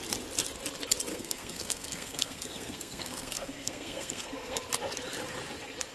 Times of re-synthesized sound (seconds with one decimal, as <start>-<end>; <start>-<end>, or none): 1.1-4.6